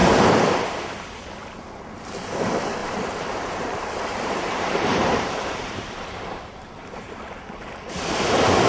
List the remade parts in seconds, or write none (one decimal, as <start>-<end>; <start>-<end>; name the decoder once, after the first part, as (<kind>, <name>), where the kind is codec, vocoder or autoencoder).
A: 0.0-1.3 (vocoder, BigVGAN v2); 2.8-7.4